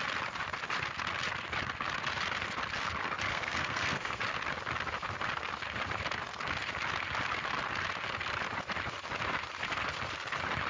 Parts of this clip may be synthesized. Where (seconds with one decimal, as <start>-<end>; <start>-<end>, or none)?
3.3-4.2